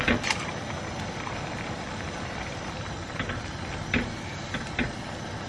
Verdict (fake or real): real